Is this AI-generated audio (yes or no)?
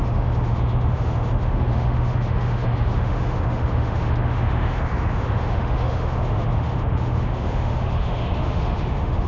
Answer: yes